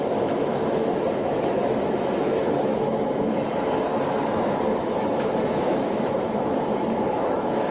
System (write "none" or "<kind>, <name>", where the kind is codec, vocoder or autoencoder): autoencoder, DAC-VAE